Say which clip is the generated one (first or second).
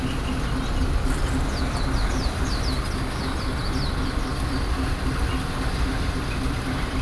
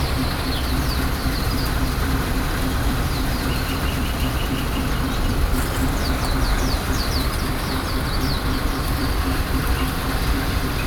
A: second